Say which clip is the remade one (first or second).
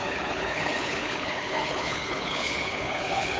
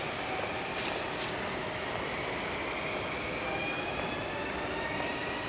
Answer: first